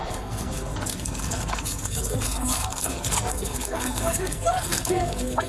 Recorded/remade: remade